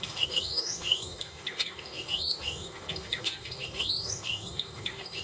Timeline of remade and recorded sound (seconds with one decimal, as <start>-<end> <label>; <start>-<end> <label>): 0.0-5.2 remade

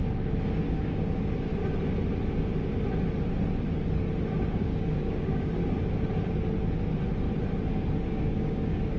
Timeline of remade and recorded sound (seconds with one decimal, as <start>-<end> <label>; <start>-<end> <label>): 0.0-1.5 remade; 1.5-4.6 recorded; 4.6-5.6 remade; 5.6-8.1 recorded; 8.1-9.0 remade

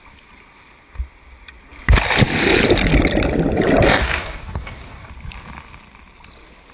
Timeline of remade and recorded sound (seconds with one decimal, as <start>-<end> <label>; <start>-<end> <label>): 0.0-3.9 recorded; 3.9-5.1 remade; 5.1-6.7 recorded

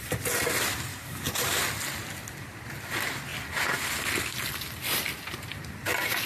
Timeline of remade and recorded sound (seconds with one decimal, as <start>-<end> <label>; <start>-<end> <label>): 0.0-0.9 recorded; 0.9-1.6 remade; 1.6-6.3 recorded

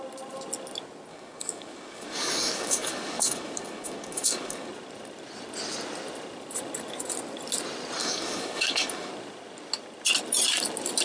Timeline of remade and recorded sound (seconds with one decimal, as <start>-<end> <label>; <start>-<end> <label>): 0.0-1.1 recorded; 1.1-4.7 remade; 4.7-8.0 recorded; 8.0-9.1 remade; 9.1-11.0 recorded

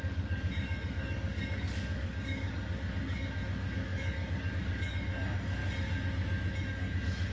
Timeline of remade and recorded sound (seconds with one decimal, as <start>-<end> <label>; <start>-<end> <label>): 0.0-5.6 remade; 5.6-6.7 recorded; 6.7-7.3 remade

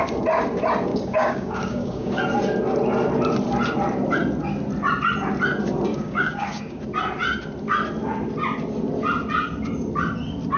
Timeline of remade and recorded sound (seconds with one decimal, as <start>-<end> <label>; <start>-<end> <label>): 0.0-0.9 recorded; 0.9-2.2 remade; 2.2-5.9 recorded; 5.9-6.8 remade; 6.8-10.6 recorded